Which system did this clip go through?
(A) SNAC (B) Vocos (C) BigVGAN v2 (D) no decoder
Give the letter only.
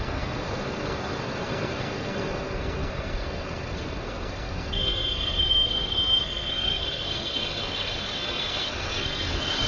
A